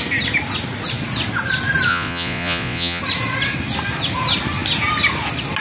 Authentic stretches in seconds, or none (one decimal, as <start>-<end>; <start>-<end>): 0.0-1.9; 3.0-5.6